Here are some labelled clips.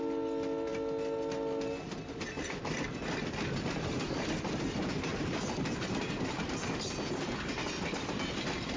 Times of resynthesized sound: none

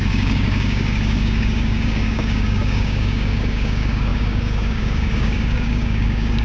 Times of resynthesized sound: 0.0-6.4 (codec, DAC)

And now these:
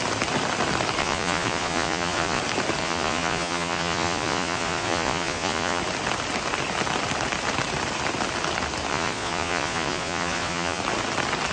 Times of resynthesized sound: 1.0-2.4 (vocoder, Vocos); 2.8-5.8; 8.9-10.8

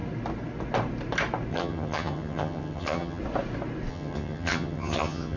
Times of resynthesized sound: 1.5-3.2 (vocoder, HiFi-GAN); 3.9-5.4